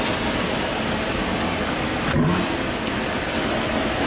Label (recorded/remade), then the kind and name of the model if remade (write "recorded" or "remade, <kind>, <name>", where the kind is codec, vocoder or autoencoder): recorded